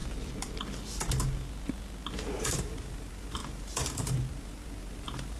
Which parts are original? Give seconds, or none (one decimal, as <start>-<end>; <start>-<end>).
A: 0.0-2.3